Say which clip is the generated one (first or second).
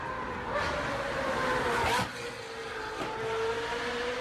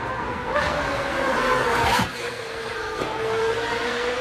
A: second